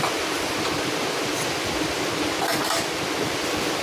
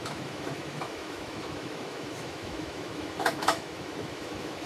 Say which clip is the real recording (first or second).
first